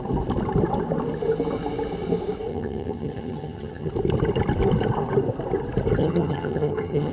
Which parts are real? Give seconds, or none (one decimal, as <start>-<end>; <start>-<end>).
0.0-2.5; 3.9-6.0